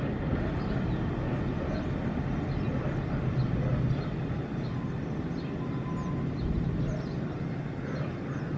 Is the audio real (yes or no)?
yes